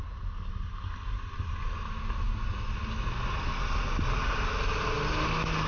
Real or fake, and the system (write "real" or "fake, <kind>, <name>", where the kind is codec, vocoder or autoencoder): real